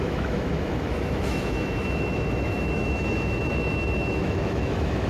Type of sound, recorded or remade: remade